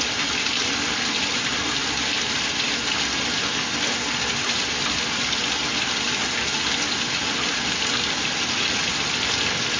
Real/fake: real